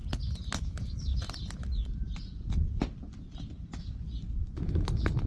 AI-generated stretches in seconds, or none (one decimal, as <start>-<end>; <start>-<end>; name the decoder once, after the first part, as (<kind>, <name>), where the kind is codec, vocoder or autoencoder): 0.6-1.1 (autoencoder, DAC-VAE); 4.3-5.3